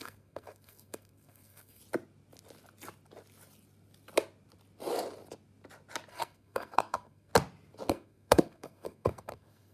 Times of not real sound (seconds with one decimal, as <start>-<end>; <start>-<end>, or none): 0.0-1.8; 6.1-7.3; 7.9-9.7